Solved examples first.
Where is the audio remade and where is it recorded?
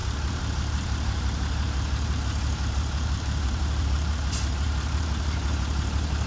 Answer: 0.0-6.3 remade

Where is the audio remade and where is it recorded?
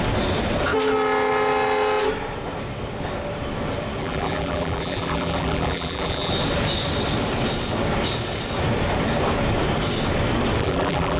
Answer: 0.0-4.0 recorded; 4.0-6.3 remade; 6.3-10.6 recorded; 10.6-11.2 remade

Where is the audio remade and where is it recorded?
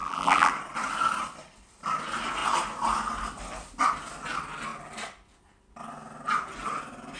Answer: 0.0-0.5 remade; 0.5-7.2 recorded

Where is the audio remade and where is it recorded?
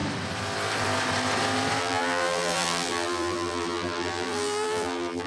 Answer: 0.0-1.8 recorded; 1.8-5.3 remade